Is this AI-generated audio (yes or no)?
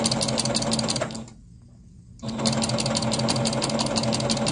no